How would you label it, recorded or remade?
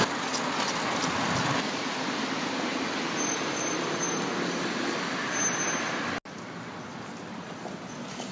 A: recorded